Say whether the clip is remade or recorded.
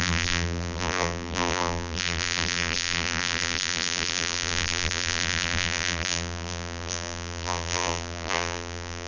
remade